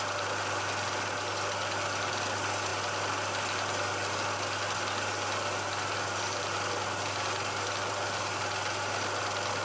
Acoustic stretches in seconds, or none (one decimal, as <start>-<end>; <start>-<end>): 0.0-9.6